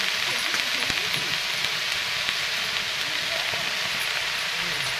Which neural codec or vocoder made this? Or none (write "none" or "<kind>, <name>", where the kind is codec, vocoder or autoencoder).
vocoder, BigVGAN v2